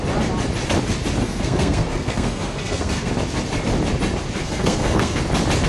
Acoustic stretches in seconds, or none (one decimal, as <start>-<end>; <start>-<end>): 0.0-1.2; 3.1-4.4; 5.2-5.7